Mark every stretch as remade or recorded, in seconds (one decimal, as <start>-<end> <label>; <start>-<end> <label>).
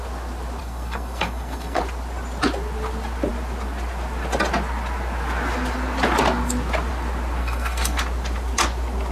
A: 0.0-0.6 recorded; 0.6-1.8 remade; 1.8-7.4 recorded; 7.4-8.0 remade; 8.0-9.1 recorded